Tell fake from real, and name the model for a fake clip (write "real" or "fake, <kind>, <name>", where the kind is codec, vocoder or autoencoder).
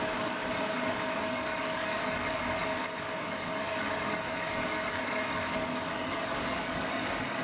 fake, codec, DAC